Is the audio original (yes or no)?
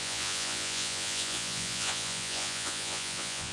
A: no